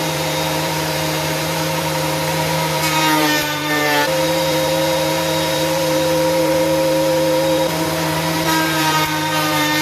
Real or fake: fake